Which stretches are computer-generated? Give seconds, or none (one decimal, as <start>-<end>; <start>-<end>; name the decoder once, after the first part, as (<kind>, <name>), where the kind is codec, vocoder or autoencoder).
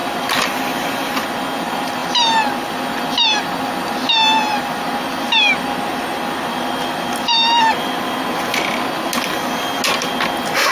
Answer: none